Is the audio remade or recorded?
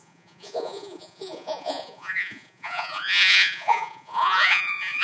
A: remade